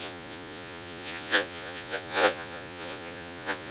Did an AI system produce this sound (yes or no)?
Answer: yes